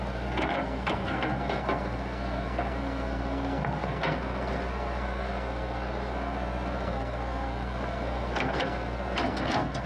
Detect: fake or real fake